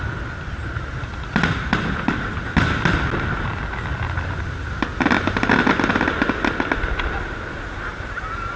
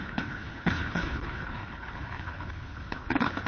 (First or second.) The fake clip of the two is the second